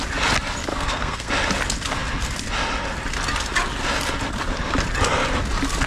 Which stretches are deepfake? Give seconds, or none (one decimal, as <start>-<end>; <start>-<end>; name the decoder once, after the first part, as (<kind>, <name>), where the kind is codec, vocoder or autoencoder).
0.7-1.3 (codec, SNAC)